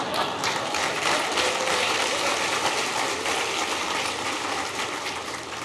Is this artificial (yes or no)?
no